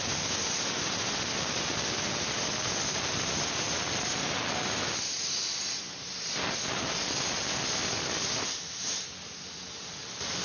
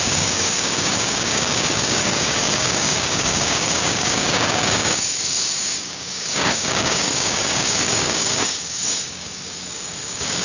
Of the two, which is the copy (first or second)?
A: second